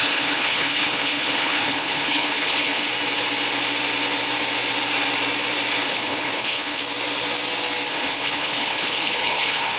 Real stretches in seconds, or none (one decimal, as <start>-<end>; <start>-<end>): 2.9-5.8; 6.8-7.9